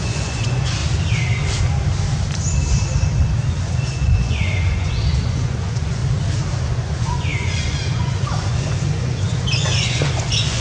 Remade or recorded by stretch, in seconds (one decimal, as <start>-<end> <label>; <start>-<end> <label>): 0.0-0.8 remade; 0.8-3.5 recorded; 3.5-6.0 remade; 6.0-6.6 recorded; 6.6-10.6 remade